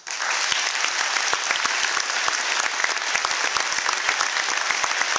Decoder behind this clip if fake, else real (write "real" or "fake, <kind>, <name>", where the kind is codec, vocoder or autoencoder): real